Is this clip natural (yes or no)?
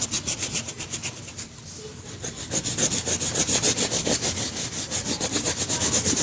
yes